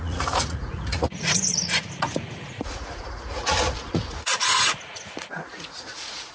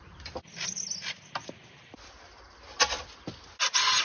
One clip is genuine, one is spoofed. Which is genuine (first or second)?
second